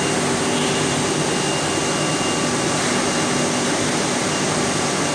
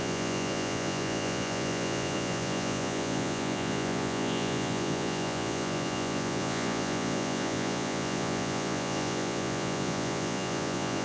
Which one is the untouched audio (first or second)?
first